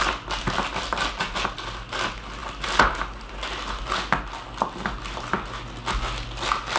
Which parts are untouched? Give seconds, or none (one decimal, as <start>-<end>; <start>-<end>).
0.0-6.8